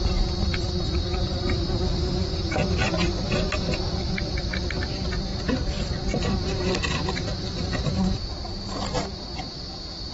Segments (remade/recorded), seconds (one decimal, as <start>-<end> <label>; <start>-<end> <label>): 0.0-2.8 recorded; 2.8-3.5 remade; 3.5-5.3 recorded; 5.3-6.7 remade; 6.7-10.1 recorded